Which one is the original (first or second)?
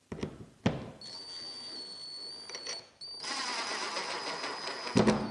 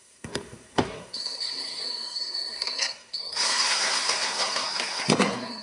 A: first